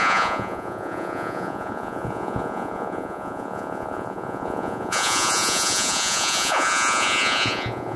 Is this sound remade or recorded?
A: remade